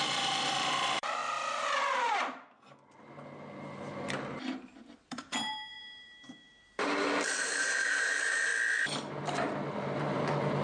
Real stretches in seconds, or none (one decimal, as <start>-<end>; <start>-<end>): 1.2-4.3; 8.5-9.1

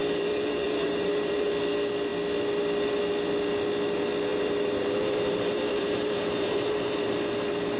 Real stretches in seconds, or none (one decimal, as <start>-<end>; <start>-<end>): 1.5-4.3; 7.1-7.8

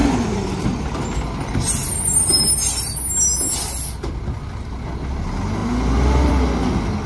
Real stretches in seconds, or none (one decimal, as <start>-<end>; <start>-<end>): 0.9-7.1